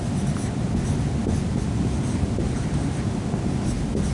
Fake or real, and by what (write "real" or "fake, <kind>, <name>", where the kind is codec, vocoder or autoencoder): real